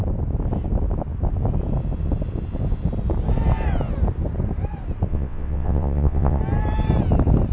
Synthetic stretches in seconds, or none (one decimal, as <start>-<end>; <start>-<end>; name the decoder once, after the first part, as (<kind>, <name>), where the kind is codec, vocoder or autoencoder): 5.1-6.4 (vocoder, WaveNeXt)